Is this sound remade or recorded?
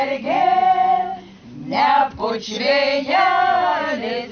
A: recorded